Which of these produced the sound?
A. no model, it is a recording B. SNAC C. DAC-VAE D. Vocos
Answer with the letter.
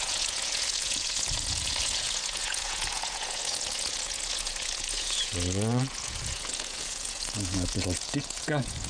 D